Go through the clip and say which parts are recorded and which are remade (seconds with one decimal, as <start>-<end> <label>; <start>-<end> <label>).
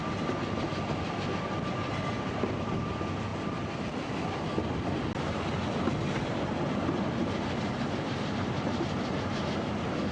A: 0.0-10.1 recorded